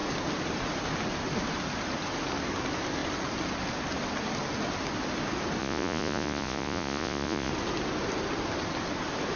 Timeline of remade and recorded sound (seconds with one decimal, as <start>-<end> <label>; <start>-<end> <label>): 0.0-5.6 recorded; 5.6-7.5 remade; 7.5-9.4 recorded